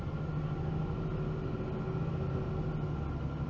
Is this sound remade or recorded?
recorded